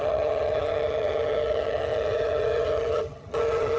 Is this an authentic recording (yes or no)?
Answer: no